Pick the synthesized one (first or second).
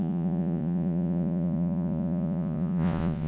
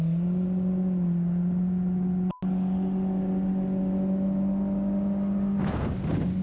first